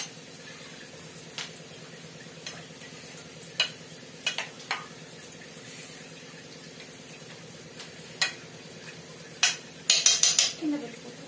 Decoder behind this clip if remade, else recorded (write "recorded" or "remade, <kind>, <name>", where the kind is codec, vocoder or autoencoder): recorded